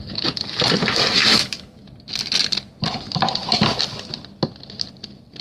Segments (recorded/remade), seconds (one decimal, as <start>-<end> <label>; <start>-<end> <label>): 0.0-1.2 recorded; 1.2-1.8 remade; 1.8-5.4 recorded